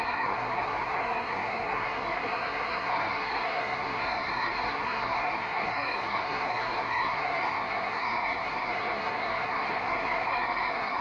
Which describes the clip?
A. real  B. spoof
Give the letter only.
B